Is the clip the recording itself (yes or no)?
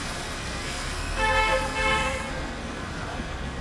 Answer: no